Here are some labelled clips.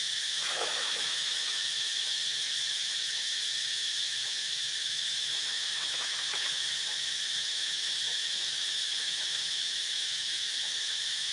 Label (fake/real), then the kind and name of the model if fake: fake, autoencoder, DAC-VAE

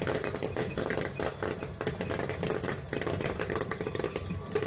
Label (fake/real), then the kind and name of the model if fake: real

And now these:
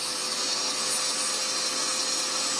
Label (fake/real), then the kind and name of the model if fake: real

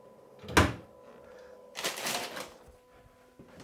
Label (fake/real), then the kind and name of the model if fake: real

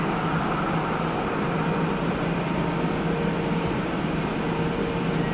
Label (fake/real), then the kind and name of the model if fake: real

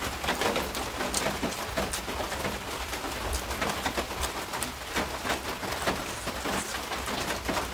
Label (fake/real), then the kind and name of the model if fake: real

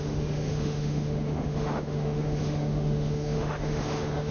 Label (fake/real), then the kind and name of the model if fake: fake, autoencoder, DAC-VAE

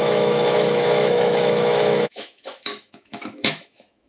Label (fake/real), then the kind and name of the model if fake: fake, autoencoder, DAC-VAE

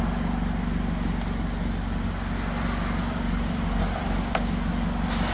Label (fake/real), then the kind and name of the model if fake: real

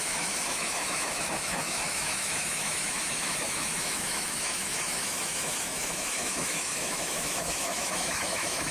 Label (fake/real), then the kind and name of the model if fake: fake, autoencoder, DAC-VAE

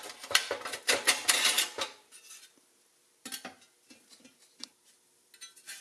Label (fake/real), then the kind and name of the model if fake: real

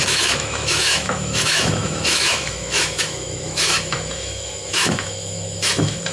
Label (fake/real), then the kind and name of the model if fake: fake, autoencoder, DAC-VAE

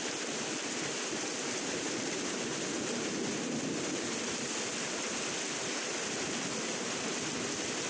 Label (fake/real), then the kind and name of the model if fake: real